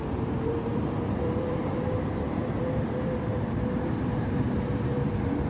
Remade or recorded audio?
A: remade